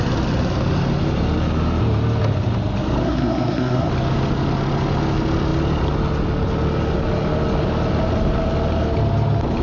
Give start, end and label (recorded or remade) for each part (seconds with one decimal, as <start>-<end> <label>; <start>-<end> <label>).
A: 0.0-3.0 recorded; 3.0-3.9 remade; 3.9-9.6 recorded